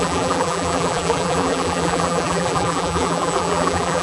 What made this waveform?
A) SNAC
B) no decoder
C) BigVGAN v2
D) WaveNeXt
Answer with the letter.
C